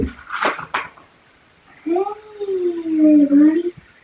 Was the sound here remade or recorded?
recorded